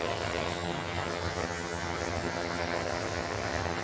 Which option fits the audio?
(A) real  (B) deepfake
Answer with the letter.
B